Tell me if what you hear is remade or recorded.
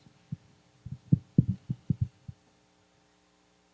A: recorded